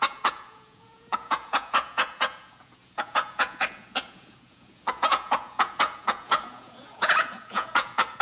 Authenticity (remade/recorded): remade